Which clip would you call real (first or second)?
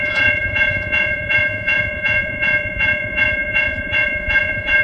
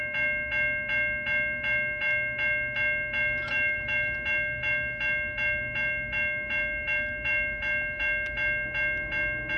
second